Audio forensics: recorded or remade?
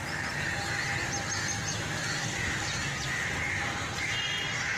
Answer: recorded